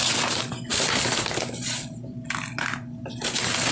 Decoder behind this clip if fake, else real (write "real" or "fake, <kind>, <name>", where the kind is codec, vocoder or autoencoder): real